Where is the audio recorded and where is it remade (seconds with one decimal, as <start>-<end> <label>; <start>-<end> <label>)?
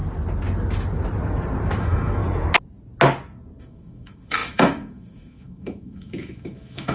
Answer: 0.0-1.8 recorded; 1.8-2.2 remade; 2.2-3.6 recorded; 3.6-6.9 remade